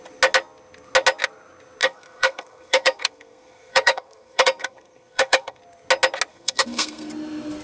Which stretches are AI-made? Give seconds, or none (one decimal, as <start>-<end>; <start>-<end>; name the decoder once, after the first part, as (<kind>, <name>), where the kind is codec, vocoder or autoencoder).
1.8-5.6 (codec, SNAC); 6.3-7.1